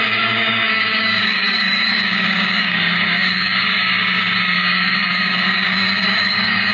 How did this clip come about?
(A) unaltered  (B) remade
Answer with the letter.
B